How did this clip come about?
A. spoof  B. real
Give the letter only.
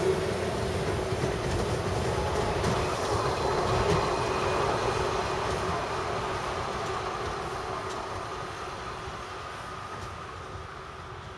B